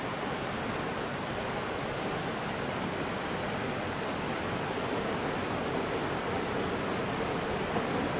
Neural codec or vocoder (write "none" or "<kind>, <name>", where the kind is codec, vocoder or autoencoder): none